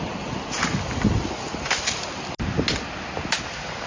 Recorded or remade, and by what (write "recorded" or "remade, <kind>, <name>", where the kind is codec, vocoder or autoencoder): recorded